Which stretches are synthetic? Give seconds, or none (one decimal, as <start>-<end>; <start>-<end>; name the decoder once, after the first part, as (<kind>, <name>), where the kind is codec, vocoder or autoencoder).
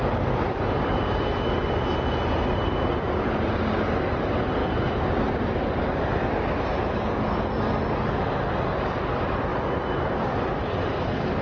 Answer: none